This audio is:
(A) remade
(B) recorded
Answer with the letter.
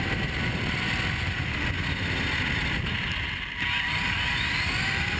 B